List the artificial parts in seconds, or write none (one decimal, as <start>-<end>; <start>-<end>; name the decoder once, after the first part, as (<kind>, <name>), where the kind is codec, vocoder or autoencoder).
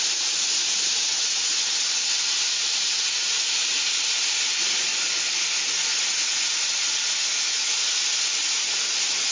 0.0-1.5 (vocoder, Vocos); 2.2-4.9; 5.7-9.3